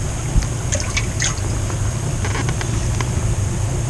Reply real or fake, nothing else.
real